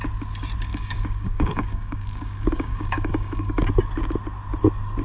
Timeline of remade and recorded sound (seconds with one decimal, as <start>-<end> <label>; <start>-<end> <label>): 0.0-0.7 recorded; 0.7-3.7 remade; 3.7-5.0 recorded